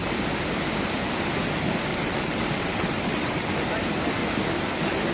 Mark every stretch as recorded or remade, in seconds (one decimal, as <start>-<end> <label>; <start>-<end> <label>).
0.0-1.9 recorded; 1.9-3.5 remade; 3.5-5.1 recorded